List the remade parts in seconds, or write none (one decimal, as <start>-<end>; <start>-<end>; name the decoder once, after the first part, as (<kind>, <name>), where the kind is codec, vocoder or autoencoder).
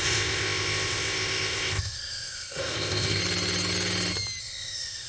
0.0-3.2 (codec, ZipCodec); 4.4-5.1